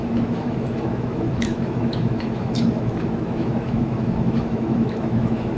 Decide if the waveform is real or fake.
fake